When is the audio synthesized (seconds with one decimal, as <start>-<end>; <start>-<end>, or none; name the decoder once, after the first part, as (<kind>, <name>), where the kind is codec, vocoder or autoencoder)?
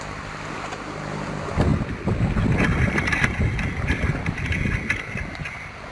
none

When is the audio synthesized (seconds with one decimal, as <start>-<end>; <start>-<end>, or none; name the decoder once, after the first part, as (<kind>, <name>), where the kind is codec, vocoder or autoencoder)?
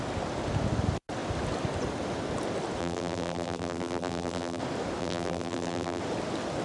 2.8-4.6 (vocoder, BigVGAN v2); 5.0-6.0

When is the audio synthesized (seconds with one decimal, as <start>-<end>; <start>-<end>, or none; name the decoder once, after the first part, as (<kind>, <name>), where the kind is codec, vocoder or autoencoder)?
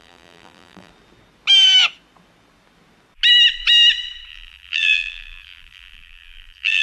0.0-0.9 (vocoder, BigVGAN v2); 4.3-6.8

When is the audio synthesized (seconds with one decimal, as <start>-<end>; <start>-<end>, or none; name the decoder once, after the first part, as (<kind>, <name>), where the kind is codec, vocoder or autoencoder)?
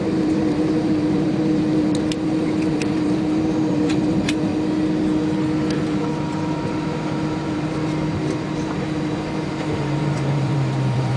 0.0-4.5 (vocoder, BigVGAN v2); 5.7-11.2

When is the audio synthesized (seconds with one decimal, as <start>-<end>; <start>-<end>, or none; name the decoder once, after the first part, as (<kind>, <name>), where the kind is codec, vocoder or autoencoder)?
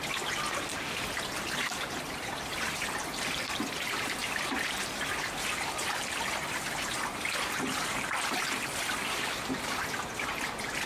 none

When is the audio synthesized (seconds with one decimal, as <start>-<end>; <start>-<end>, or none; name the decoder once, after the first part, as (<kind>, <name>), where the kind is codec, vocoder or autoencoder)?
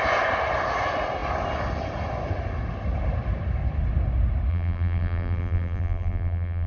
4.5-6.7 (vocoder, BigVGAN v2)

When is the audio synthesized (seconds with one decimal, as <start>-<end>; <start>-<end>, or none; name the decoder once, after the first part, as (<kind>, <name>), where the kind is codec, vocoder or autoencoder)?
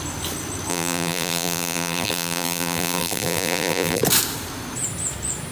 0.7-4.0 (vocoder, BigVGAN v2)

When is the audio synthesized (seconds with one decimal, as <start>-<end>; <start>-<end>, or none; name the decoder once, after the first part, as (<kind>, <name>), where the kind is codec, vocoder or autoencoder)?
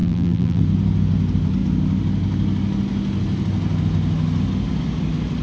0.0-0.6 (vocoder, BigVGAN v2)